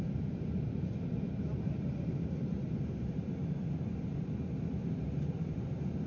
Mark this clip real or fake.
fake